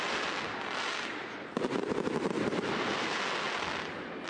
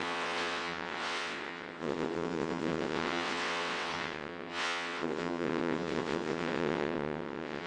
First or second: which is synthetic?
second